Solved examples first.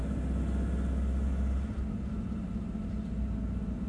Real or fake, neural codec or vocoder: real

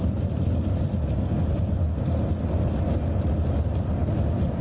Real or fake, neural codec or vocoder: real